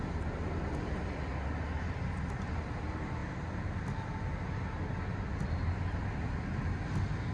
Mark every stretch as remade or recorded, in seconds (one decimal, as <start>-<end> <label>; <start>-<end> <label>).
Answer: 0.0-7.3 recorded